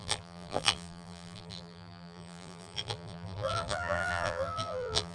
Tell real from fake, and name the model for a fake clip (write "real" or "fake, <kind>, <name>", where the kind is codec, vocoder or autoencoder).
fake, vocoder, BigVGAN v2